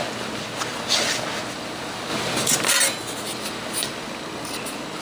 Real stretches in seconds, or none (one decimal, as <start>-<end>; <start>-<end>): 0.0-5.0